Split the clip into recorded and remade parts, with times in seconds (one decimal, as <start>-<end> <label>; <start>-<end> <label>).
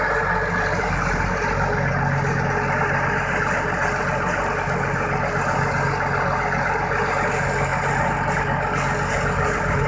0.0-9.9 recorded